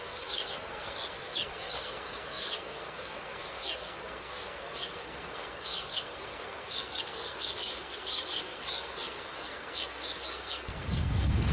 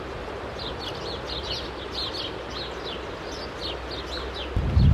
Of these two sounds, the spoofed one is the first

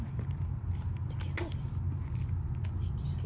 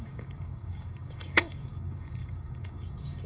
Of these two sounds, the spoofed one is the second